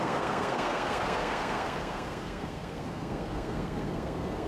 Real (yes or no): no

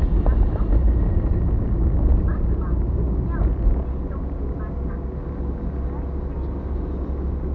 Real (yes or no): yes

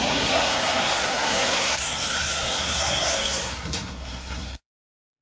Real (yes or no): no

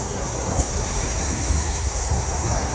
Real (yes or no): no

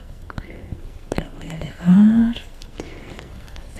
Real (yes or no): no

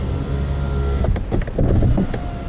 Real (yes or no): yes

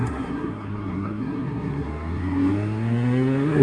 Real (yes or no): no